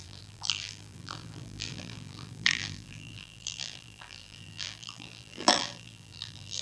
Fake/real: fake